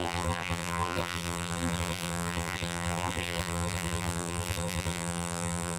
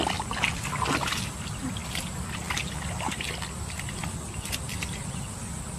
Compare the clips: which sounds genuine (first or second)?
second